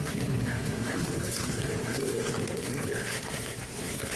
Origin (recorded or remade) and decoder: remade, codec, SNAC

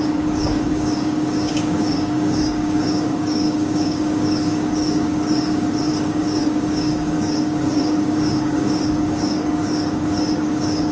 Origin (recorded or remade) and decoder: remade, codec, DAC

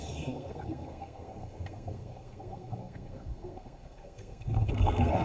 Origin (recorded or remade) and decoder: remade, codec, SNAC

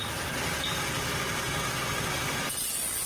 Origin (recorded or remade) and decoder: recorded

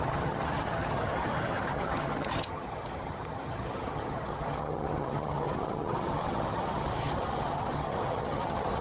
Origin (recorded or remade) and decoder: remade, vocoder, HiFi-GAN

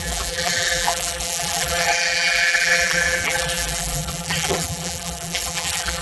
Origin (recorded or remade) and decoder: remade, vocoder, BigVGAN v2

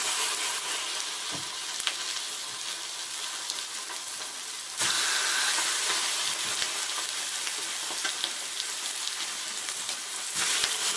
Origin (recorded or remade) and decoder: recorded